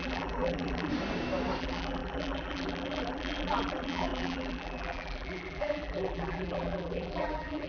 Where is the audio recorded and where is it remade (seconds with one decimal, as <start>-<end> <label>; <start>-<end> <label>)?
0.0-0.9 remade; 0.9-1.6 recorded; 1.6-7.7 remade